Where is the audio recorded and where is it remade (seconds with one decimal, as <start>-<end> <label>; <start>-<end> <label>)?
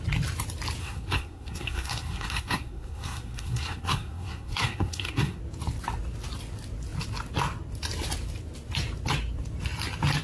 0.0-0.8 recorded; 0.8-5.4 remade; 5.4-10.2 recorded